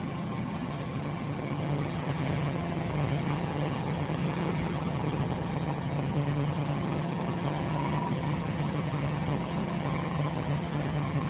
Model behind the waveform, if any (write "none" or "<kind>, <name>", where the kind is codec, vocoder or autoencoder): vocoder, HiFi-GAN